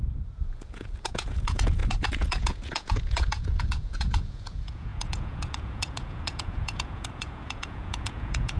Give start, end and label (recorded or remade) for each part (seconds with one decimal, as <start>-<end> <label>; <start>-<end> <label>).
0.0-8.6 remade